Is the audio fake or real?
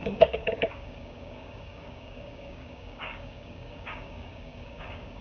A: fake